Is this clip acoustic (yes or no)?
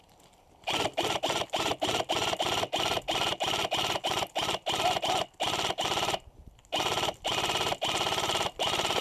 yes